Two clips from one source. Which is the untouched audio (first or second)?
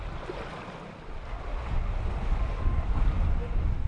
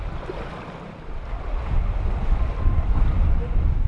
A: first